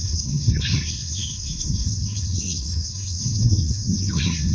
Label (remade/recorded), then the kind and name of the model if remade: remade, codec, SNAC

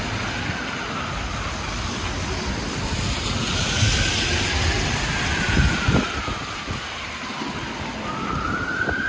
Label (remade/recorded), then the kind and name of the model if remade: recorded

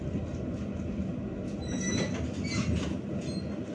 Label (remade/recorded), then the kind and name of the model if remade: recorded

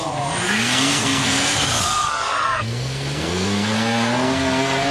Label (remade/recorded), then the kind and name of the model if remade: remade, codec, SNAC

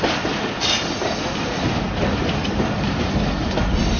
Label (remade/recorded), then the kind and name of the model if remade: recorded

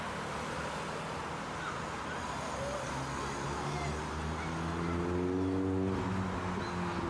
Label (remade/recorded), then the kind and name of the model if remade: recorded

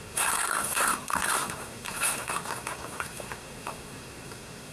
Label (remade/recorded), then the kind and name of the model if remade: remade, codec, SNAC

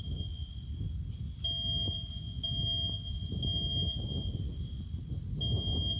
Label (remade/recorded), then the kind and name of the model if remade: recorded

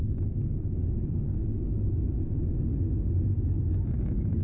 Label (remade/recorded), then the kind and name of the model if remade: recorded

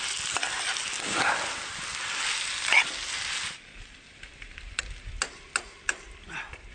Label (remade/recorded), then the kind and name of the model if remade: recorded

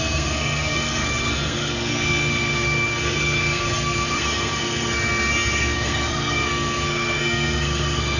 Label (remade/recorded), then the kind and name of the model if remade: remade, codec, SNAC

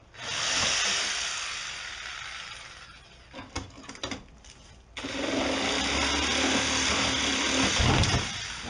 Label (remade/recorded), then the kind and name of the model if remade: recorded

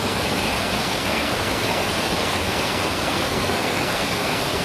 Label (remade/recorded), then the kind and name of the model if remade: remade, codec, SNAC